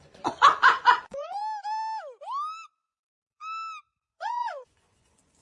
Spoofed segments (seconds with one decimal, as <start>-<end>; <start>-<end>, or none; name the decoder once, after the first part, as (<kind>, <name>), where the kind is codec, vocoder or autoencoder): 0.0-1.4 (vocoder, Vocos); 2.7-3.4; 4.0-5.4